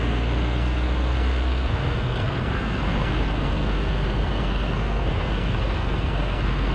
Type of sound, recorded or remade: remade